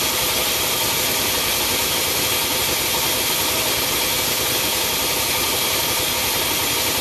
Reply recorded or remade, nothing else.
recorded